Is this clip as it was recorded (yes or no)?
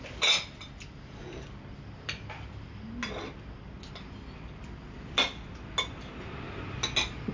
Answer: yes